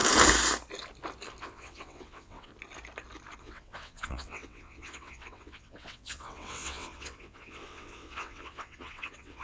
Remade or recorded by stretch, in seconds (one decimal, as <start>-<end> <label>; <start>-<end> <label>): 0.0-1.4 recorded; 1.4-2.5 remade; 2.5-3.4 recorded; 3.4-9.4 remade